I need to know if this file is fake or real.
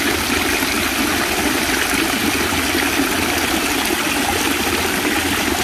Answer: real